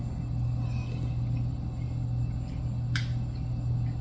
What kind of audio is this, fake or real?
real